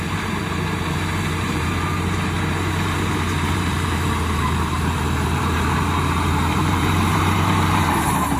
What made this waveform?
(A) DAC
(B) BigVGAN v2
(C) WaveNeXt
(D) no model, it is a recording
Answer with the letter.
B